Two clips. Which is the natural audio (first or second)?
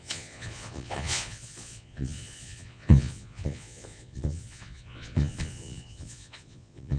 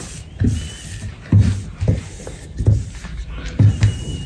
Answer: second